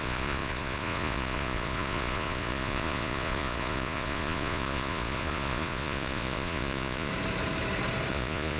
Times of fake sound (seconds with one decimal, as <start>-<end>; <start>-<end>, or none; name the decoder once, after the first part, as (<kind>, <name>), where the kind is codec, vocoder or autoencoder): 0.0-7.1 (vocoder, Vocos); 8.1-8.6